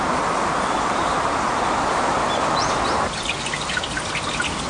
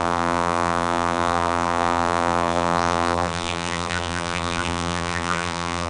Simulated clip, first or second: second